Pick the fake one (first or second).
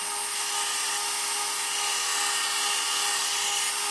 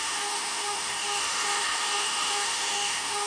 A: second